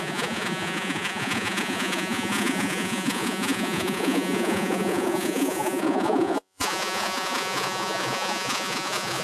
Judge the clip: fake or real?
fake